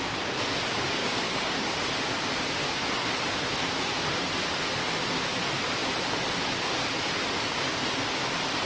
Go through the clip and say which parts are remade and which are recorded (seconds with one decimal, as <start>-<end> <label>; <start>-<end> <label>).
0.0-1.0 recorded; 1.0-1.7 remade; 1.7-8.7 recorded